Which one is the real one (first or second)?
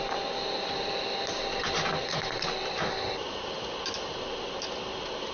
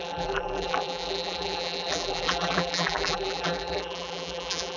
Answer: first